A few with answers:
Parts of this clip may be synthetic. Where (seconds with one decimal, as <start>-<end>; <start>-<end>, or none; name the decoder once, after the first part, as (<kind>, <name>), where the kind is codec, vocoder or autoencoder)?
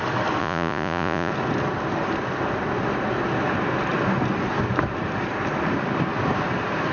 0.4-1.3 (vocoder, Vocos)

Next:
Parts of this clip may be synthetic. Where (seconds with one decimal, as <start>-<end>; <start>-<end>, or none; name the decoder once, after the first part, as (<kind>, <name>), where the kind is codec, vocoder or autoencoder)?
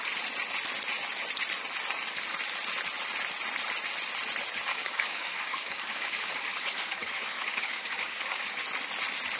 4.7-8.5 (codec, DAC)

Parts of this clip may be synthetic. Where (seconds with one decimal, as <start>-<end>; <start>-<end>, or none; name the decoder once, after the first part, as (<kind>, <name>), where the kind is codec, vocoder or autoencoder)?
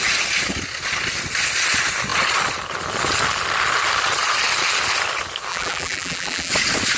5.5-6.5 (vocoder, BigVGAN v2)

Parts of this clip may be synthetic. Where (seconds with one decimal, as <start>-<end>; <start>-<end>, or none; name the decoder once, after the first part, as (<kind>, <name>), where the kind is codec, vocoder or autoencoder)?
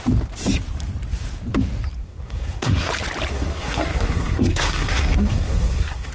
2.0-2.9 (codec, SNAC); 3.3-6.1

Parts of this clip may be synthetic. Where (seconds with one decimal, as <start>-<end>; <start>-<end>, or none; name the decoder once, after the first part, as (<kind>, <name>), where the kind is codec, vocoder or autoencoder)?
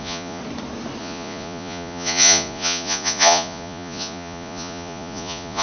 0.0-0.4 (vocoder, Vocos); 1.0-5.6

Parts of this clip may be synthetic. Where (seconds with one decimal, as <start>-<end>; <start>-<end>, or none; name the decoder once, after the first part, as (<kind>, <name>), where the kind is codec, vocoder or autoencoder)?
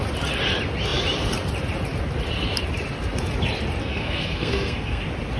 3.8-5.0 (codec, SNAC)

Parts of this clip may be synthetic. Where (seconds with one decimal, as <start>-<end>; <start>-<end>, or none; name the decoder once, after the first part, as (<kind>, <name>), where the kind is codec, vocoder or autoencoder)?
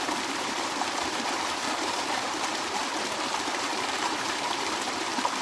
0.0-2.8 (vocoder, BigVGAN v2); 3.3-5.4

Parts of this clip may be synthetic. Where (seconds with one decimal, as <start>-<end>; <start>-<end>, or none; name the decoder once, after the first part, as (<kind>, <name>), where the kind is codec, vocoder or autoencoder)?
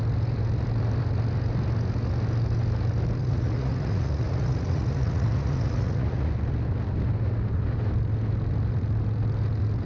3.2-6.3 (vocoder, Vocos)